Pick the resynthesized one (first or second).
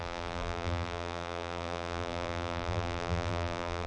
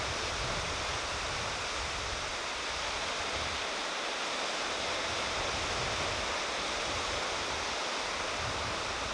first